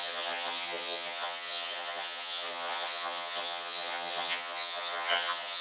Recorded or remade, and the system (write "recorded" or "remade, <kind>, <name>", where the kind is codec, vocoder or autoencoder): remade, vocoder, HiFi-GAN